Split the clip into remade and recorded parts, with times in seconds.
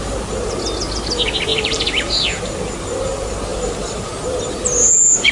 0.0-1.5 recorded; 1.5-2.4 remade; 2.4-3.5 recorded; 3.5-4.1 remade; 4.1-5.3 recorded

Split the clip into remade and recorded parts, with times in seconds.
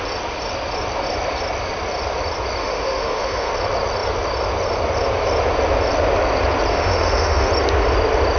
0.0-2.6 recorded; 2.6-3.5 remade; 3.5-6.7 recorded; 6.7-7.5 remade; 7.5-8.4 recorded